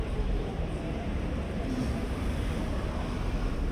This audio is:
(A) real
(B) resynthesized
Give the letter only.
B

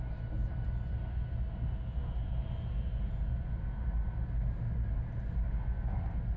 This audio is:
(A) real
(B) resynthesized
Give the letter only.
A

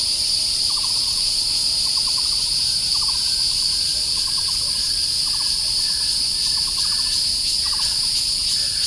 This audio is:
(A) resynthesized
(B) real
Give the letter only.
A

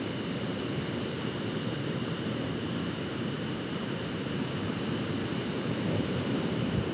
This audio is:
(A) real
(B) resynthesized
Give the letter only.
B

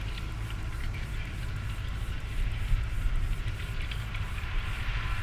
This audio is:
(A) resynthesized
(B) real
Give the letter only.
A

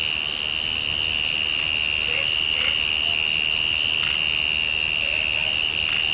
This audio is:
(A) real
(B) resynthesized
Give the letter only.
A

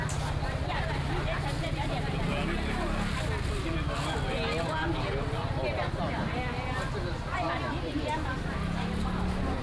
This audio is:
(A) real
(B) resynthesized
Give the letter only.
A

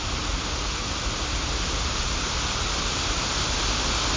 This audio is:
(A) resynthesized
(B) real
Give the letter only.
B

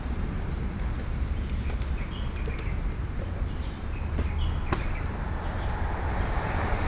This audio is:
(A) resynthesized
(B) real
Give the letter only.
B